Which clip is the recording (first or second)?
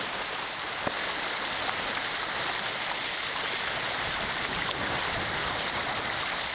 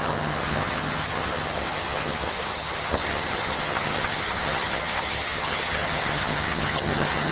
first